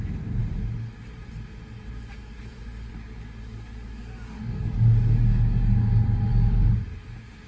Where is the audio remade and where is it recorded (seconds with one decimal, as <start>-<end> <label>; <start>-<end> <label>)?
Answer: 0.0-2.9 recorded; 2.9-6.7 remade; 6.7-7.5 recorded